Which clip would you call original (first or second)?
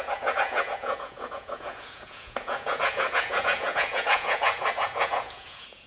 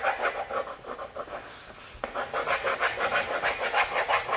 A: second